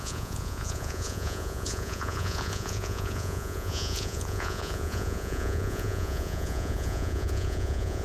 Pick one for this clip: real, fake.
fake